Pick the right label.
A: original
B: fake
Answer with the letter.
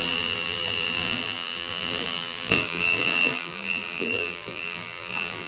B